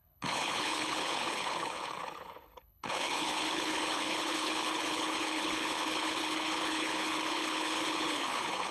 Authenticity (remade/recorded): remade